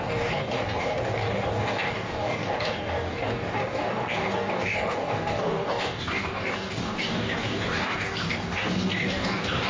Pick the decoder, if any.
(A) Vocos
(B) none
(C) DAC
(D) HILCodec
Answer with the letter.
C